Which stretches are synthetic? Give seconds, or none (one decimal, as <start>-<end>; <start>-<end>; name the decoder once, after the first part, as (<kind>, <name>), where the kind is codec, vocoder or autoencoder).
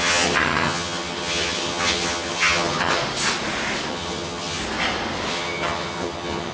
0.0-3.0 (vocoder, HiFi-GAN); 3.9-4.6; 5.3-6.5